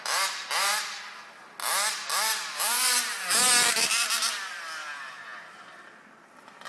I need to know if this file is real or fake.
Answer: real